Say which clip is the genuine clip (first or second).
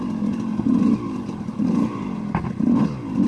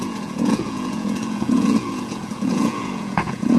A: first